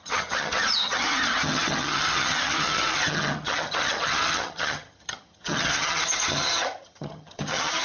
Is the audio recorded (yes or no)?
no